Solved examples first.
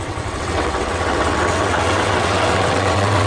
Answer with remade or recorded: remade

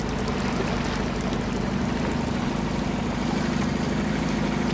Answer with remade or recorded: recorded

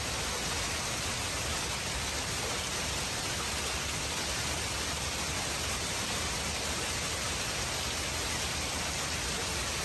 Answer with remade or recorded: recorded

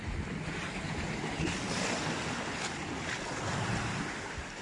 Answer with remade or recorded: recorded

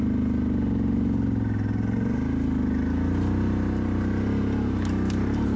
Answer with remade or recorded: recorded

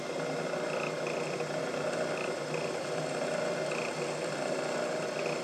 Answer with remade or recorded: recorded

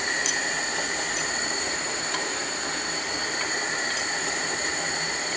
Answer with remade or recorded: remade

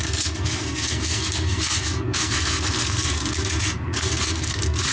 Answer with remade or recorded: remade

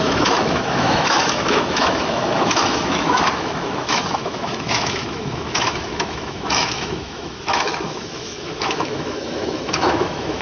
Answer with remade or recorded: remade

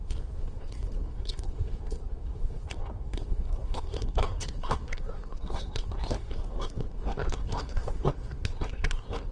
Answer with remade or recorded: remade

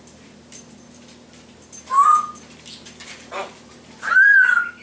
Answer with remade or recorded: recorded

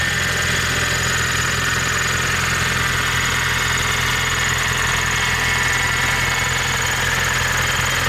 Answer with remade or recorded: recorded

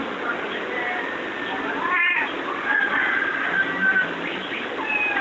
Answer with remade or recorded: recorded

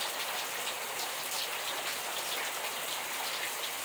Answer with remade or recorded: recorded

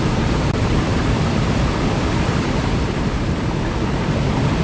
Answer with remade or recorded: remade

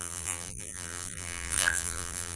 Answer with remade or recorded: remade